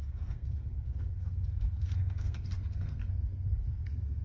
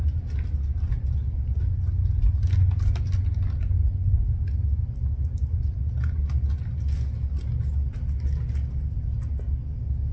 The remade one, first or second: first